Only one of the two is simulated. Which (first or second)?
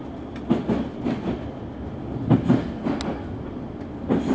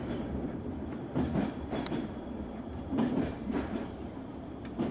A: second